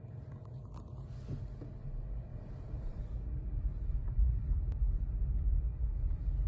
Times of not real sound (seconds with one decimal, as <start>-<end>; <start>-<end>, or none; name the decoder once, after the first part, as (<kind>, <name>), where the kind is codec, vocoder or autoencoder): 2.3-3.0 (vocoder, BigVGAN v2); 3.7-5.2